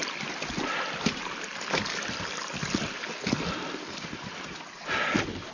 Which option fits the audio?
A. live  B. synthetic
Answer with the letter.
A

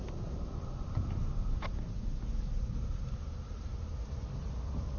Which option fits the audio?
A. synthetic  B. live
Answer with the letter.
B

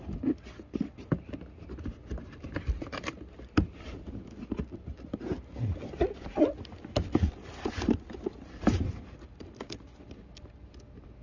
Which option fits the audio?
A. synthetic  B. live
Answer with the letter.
B